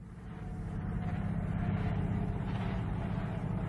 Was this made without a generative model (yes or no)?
no